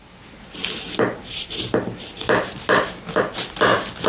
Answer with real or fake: real